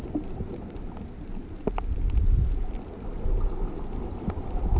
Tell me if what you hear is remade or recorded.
recorded